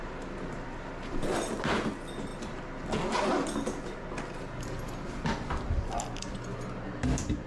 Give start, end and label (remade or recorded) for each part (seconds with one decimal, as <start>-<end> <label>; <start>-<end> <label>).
0.0-7.5 recorded